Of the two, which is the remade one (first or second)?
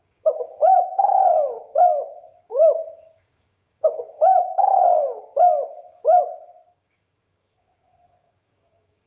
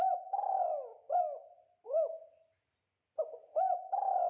first